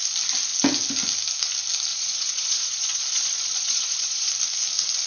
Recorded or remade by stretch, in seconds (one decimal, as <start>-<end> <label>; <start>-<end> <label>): 0.0-1.9 recorded; 1.9-4.3 remade; 4.3-5.1 recorded